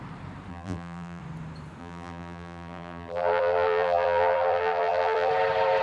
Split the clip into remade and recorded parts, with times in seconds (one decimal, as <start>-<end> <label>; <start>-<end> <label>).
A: 0.0-0.5 recorded; 0.5-1.2 remade; 1.2-1.8 recorded; 1.8-5.3 remade; 5.3-5.8 recorded